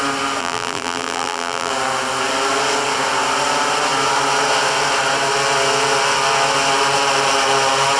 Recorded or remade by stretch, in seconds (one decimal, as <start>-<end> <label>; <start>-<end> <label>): 0.0-0.4 recorded; 0.4-1.7 remade; 1.7-8.0 recorded